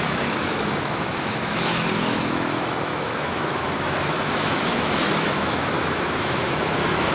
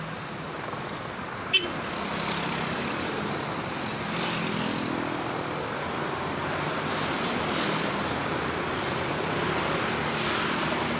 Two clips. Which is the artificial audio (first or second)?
first